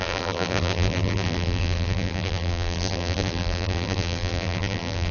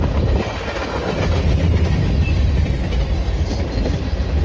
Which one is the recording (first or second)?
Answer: second